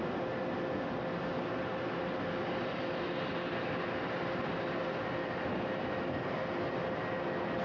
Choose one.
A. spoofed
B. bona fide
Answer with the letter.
B